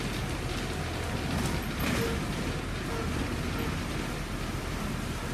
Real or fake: real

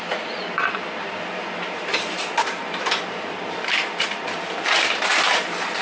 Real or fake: fake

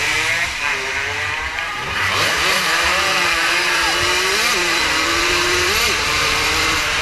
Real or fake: fake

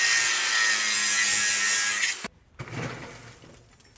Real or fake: real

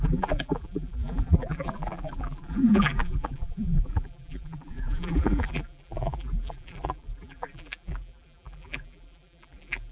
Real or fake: fake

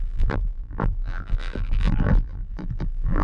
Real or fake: fake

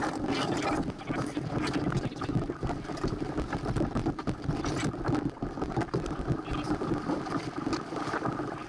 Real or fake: real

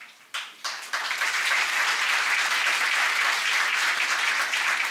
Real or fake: real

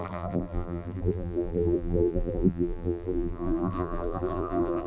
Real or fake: fake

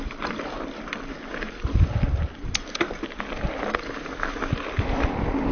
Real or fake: fake